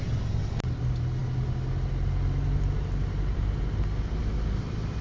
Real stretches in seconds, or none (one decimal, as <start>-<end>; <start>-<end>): 0.0-5.0